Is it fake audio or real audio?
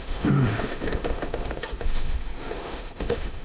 fake